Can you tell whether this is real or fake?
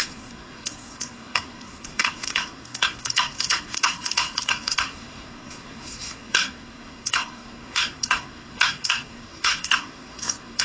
fake